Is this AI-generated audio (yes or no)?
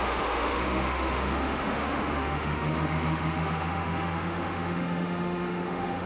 yes